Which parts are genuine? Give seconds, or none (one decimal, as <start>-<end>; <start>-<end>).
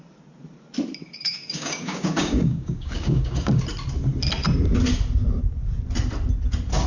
0.0-1.0; 3.6-6.9